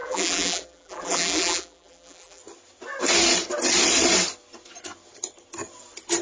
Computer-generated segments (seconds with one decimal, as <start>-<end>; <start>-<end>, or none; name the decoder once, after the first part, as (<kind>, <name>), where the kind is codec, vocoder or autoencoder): 0.0-2.4 (vocoder, BigVGAN v2)